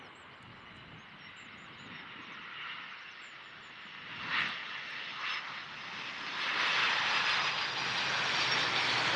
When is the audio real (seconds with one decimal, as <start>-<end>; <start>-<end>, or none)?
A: 0.0-9.2